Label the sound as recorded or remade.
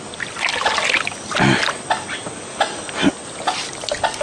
recorded